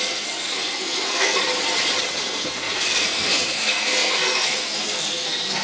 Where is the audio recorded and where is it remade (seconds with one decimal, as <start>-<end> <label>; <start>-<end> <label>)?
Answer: 0.0-1.4 remade; 1.4-2.2 recorded; 2.2-5.6 remade